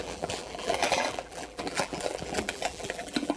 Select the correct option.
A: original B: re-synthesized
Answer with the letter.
B